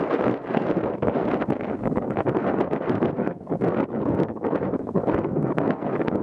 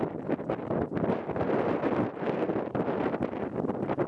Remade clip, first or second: first